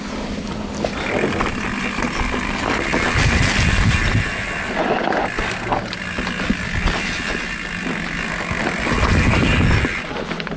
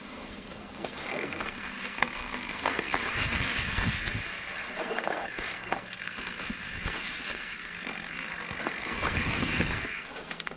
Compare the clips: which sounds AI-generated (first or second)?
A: second